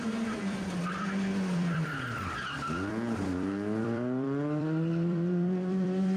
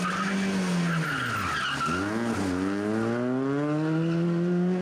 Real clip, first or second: second